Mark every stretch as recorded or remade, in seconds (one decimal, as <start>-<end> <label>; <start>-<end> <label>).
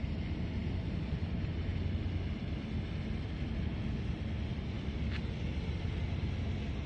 0.0-6.9 recorded